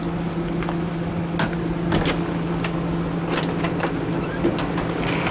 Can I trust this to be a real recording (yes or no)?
yes